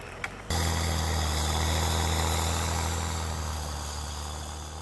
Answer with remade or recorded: recorded